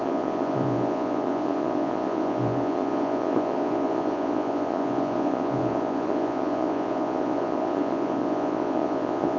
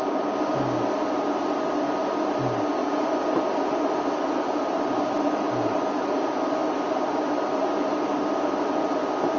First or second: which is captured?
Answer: second